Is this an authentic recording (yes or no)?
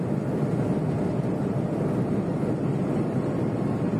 yes